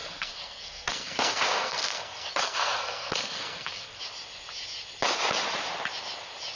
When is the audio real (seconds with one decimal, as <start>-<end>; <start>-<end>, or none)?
4.0-6.6